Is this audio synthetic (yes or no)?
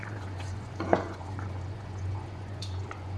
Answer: yes